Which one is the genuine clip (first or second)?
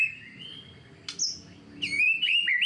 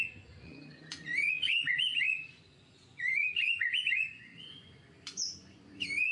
first